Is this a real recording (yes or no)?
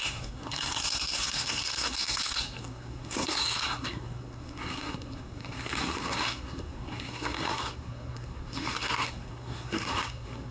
no